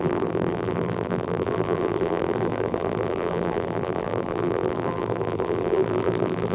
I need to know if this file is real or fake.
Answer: fake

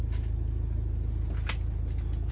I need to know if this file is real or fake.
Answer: real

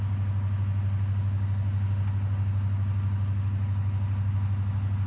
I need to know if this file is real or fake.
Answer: real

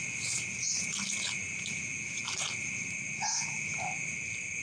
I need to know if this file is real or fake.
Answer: real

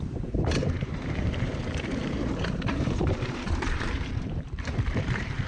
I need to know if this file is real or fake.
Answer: fake